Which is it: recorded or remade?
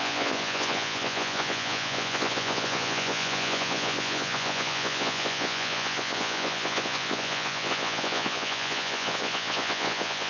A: remade